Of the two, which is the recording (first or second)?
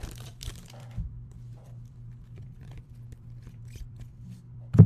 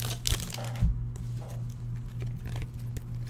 second